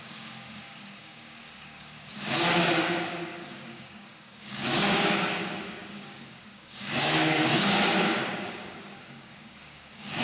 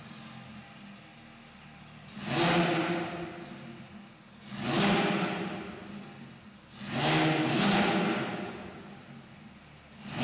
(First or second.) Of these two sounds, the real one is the second